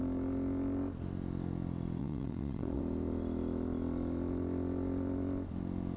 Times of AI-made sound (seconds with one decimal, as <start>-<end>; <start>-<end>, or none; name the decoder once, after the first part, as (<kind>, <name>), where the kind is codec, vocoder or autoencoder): 2.0-2.8 (vocoder, WaveNeXt)